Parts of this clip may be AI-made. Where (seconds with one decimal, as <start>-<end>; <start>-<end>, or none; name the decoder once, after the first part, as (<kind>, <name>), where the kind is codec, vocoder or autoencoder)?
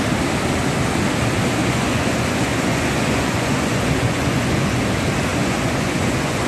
1.6-4.8 (vocoder, Vocos); 5.3-6.5